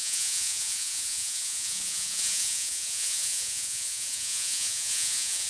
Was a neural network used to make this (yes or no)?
yes